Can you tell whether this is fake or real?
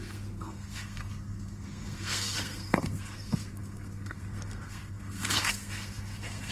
fake